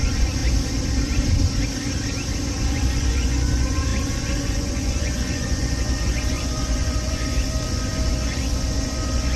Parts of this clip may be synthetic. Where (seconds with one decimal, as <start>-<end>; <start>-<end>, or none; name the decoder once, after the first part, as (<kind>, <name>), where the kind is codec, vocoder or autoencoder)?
0.0-0.4 (vocoder, Vocos); 2.6-9.4